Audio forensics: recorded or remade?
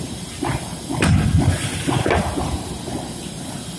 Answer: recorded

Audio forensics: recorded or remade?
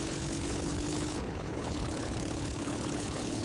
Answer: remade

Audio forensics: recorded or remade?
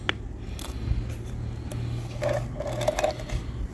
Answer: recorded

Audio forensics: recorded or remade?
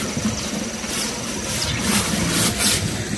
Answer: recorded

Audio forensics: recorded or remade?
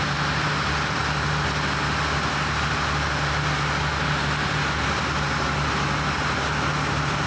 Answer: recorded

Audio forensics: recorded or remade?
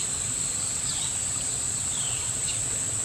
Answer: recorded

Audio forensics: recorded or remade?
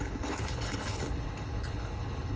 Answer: remade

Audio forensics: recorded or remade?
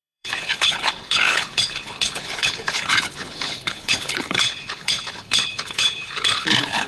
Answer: remade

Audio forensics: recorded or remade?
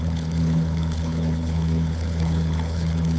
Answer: remade